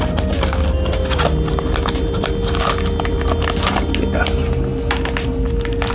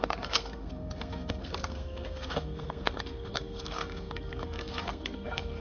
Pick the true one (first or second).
first